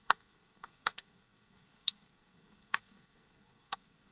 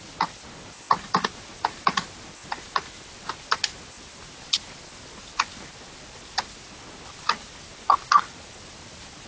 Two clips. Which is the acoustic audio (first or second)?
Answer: second